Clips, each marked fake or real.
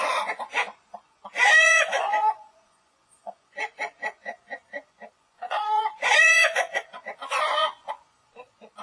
fake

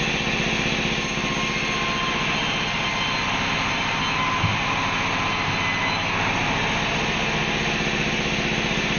real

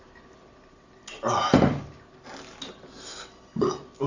real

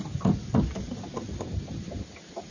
real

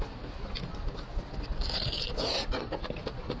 real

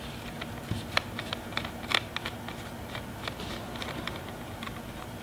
real